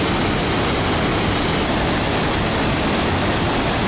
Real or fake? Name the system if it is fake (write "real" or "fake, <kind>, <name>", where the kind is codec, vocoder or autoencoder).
real